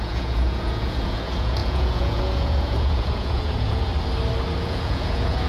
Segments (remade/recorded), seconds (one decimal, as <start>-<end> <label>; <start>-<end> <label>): 0.0-3.9 remade; 3.9-4.6 recorded; 4.6-5.5 remade